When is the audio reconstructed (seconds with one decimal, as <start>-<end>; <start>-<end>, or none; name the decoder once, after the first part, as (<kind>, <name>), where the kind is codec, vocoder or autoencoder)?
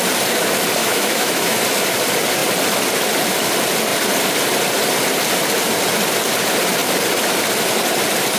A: 0.8-1.6 (autoencoder, DAC-VAE)